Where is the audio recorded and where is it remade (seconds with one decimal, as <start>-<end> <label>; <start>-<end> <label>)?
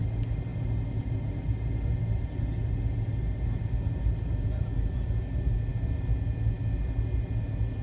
0.0-7.8 recorded